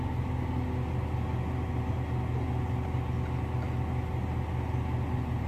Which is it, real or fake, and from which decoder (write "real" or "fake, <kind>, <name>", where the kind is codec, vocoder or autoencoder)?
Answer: real